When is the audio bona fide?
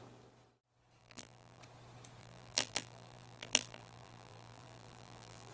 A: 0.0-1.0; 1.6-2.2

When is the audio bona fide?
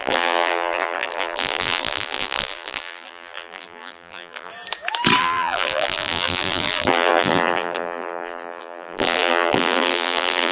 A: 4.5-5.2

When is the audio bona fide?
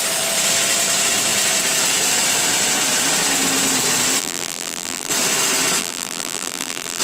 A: 0.0-4.2; 5.1-5.8